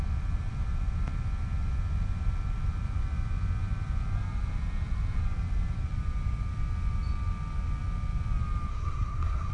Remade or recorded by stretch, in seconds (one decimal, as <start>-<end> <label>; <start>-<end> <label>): 0.0-8.7 recorded; 8.7-9.5 remade